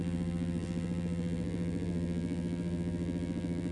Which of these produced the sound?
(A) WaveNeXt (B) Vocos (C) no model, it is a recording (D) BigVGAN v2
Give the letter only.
D